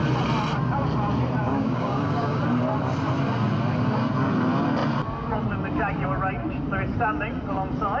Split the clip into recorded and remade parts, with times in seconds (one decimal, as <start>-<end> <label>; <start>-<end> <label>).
0.0-1.4 recorded; 1.4-2.4 remade; 2.4-8.0 recorded